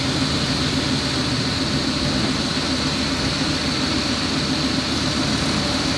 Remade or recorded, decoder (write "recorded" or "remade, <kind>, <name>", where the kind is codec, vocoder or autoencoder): recorded